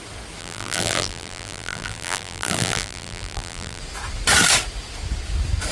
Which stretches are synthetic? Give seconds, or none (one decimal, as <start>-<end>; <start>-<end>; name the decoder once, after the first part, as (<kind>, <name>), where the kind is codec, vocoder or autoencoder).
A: 0.4-3.8 (vocoder, BigVGAN v2)